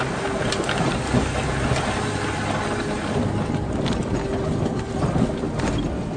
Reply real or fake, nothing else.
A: real